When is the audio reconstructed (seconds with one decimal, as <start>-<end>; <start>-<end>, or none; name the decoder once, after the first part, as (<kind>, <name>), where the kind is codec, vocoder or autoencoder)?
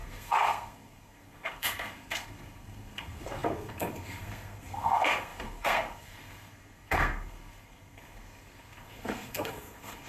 0.0-10.1 (codec, SNAC)